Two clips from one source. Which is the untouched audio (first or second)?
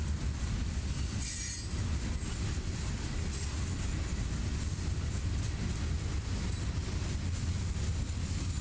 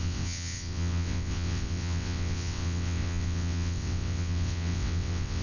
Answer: first